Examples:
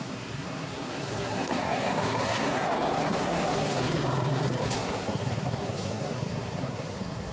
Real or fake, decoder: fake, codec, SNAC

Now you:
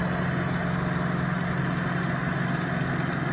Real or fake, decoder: real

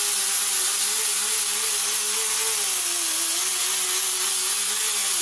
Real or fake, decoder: real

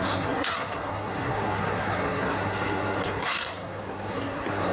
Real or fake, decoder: fake, codec, SNAC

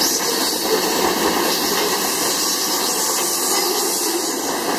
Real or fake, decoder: real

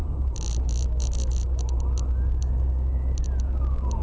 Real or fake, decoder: real